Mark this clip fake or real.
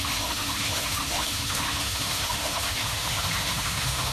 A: fake